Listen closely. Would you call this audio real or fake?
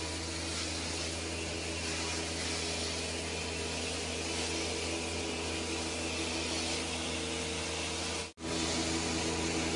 real